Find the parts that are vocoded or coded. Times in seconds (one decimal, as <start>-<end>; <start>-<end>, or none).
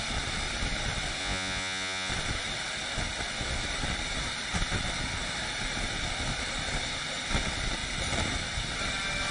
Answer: 1.2-2.1